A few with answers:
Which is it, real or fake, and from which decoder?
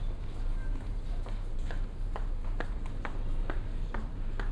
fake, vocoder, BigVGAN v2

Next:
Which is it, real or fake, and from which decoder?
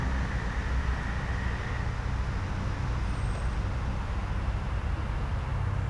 real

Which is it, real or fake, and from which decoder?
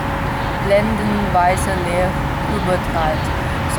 real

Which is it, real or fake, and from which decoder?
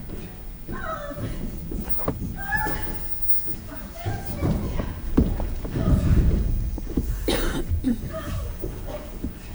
fake, vocoder, BigVGAN v2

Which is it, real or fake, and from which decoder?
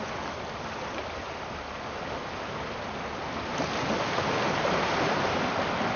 real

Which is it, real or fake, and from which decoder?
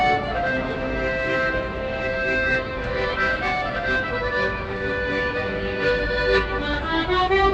fake, autoencoder, DAC-VAE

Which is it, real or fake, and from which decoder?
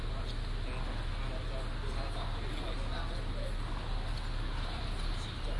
real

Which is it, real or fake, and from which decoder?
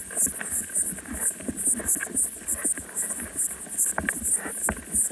real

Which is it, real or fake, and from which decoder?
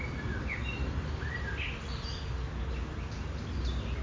real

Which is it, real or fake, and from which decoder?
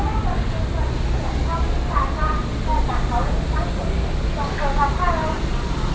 real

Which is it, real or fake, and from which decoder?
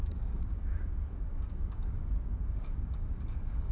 fake, codec, DAC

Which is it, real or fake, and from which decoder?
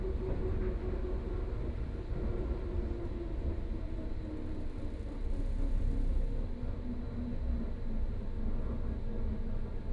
real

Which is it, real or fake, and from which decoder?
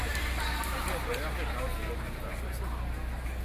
real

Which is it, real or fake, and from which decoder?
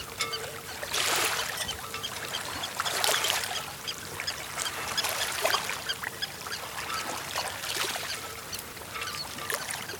fake, vocoder, BigVGAN v2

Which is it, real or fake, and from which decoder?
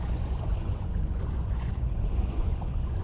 fake, vocoder, Vocos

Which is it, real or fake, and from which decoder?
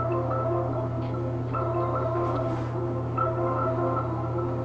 real